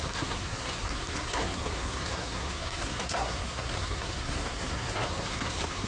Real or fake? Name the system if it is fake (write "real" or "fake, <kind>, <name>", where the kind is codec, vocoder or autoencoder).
fake, codec, SNAC